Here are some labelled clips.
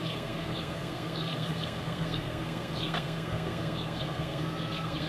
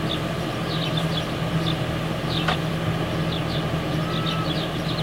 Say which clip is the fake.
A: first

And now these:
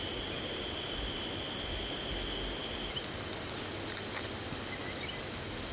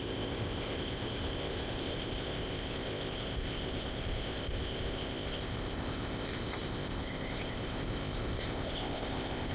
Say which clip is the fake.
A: second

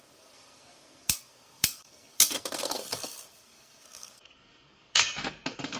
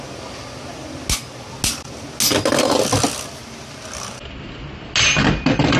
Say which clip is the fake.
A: first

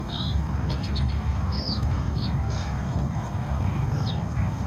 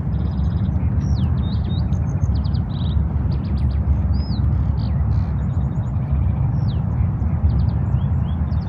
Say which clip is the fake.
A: first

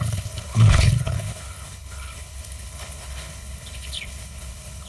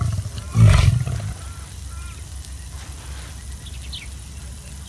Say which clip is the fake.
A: first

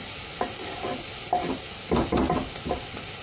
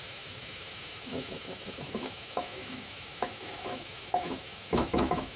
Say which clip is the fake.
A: second